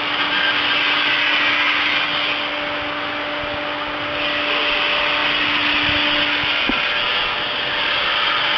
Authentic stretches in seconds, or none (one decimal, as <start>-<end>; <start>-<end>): 0.0-8.6